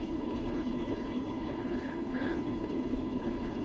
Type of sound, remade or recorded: remade